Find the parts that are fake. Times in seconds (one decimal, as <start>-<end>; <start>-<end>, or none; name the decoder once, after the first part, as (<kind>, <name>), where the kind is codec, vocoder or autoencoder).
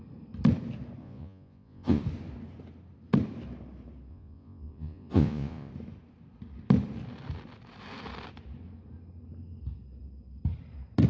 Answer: 1.0-2.0 (vocoder, Vocos); 4.1-5.7